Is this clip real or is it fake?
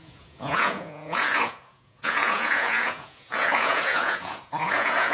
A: fake